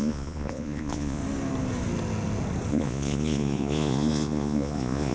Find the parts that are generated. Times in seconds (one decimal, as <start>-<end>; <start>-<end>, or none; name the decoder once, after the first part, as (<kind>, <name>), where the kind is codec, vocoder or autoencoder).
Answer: 0.0-1.2 (vocoder, Vocos); 2.7-5.1